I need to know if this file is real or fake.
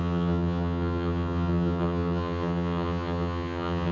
fake